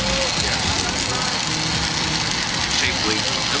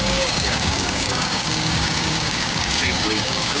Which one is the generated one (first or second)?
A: second